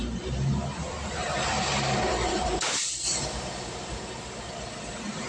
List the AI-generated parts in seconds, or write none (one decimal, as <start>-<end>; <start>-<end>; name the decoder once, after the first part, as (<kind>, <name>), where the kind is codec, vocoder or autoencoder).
0.8-4.0 (vocoder, BigVGAN v2)